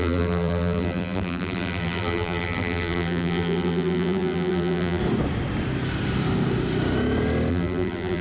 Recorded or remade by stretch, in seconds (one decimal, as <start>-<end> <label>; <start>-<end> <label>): 0.0-5.0 remade; 5.0-7.5 recorded; 7.5-8.2 remade